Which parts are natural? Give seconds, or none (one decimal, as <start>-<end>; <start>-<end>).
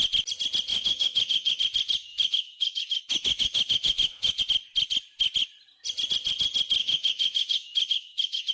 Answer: 0.0-0.7; 1.6-2.1; 4.4-6.8